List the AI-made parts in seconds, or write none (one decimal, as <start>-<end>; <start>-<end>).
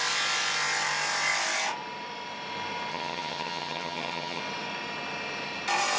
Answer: 2.9-4.4